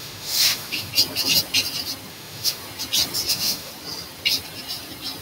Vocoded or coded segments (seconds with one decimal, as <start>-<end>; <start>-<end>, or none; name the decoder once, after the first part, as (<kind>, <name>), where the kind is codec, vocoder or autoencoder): 0.0-0.9 (autoencoder, DAC-VAE); 2.1-2.6; 3.3-3.7